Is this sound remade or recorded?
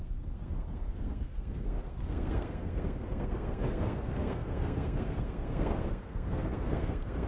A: remade